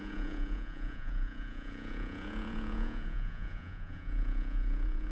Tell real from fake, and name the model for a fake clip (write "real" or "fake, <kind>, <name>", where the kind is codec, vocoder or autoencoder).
fake, vocoder, Vocos